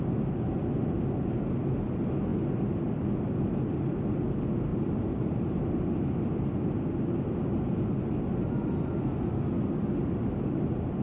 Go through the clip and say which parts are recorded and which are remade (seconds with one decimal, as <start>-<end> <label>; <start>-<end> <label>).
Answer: 0.0-11.0 recorded